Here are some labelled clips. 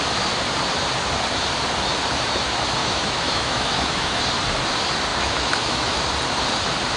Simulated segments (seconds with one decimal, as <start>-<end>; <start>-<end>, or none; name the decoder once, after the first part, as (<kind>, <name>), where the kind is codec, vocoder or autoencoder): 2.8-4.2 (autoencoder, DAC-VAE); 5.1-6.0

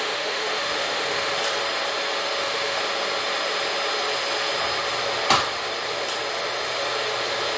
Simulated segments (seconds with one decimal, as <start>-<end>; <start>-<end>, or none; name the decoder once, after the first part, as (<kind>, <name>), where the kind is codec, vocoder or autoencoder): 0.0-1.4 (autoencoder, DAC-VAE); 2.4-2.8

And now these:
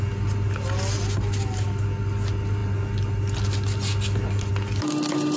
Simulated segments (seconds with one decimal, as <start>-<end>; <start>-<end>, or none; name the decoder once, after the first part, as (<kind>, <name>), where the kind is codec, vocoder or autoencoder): none